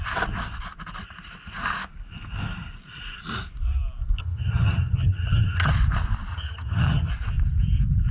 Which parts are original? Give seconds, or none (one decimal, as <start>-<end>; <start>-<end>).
0.0-4.2; 5.7-6.3; 7.1-8.1